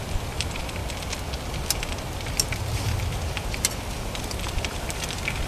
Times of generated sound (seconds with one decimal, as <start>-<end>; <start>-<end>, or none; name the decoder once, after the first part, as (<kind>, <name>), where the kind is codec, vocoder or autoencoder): 0.0-0.8 (vocoder, BigVGAN v2); 4.1-5.5